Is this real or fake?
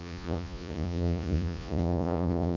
fake